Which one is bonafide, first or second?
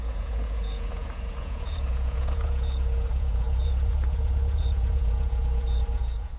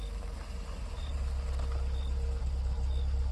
second